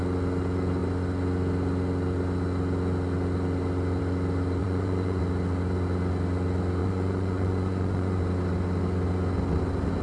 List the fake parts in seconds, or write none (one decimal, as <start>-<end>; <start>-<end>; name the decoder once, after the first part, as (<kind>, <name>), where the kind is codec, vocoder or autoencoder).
4.6-5.2 (vocoder, Vocos); 6.8-8.2

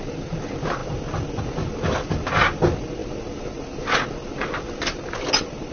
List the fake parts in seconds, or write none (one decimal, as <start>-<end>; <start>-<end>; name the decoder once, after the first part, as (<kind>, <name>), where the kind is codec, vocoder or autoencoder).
none